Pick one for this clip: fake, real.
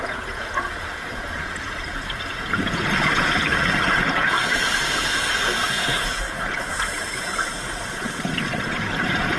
fake